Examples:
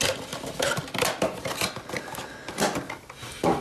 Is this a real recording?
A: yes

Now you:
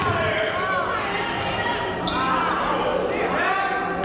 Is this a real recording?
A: yes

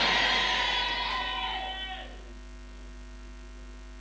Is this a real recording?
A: yes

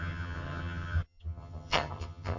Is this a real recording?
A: no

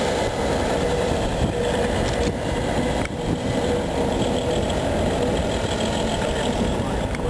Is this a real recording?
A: no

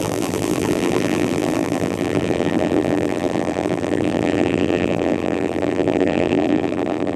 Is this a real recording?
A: no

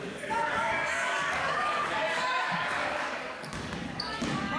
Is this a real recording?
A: no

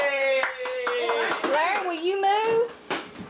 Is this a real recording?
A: yes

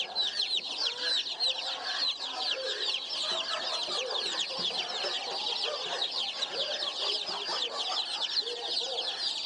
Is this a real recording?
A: yes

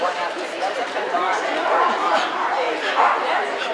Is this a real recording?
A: no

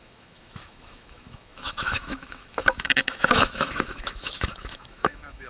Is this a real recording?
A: no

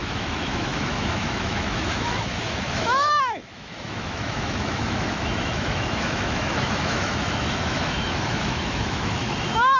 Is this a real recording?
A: no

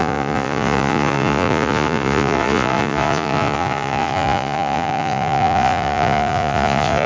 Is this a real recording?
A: no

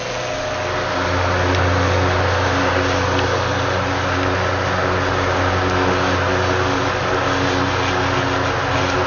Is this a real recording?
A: yes